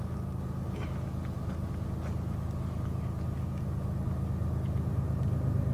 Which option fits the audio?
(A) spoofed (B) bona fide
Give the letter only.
B